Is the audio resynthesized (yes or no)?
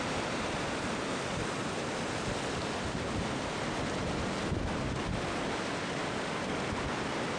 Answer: no